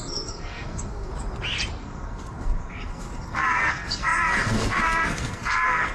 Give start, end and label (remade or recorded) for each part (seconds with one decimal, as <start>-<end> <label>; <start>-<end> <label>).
0.0-1.1 remade; 1.1-1.8 recorded; 1.8-5.9 remade